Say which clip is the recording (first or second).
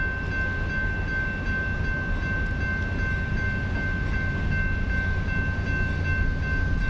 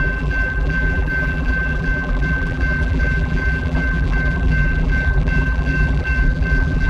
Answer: first